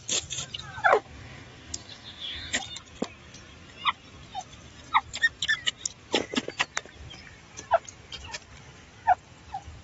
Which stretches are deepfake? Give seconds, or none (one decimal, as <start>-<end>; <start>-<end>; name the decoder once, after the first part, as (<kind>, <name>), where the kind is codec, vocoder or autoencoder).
0.9-2.6 (codec, DAC)